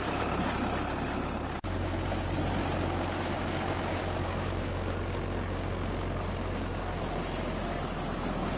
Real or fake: real